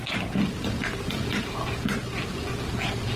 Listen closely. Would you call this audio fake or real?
real